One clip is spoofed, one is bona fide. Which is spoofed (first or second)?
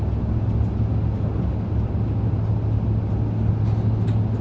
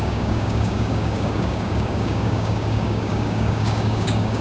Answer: second